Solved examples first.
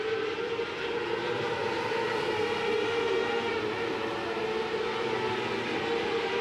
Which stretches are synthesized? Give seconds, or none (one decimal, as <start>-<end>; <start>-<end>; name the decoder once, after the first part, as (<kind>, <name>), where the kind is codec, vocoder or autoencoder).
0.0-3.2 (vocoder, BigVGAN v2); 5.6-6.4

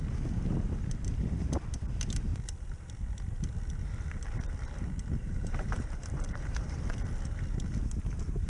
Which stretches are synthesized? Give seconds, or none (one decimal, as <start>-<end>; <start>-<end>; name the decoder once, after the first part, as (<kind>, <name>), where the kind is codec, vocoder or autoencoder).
5.2-6.9 (vocoder, BigVGAN v2)

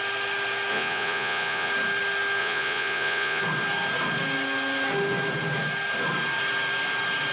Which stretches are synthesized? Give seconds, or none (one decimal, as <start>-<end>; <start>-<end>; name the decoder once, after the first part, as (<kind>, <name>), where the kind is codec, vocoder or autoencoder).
0.7-1.7 (vocoder, Vocos); 2.4-3.4